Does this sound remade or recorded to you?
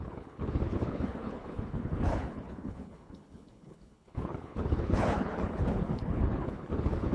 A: remade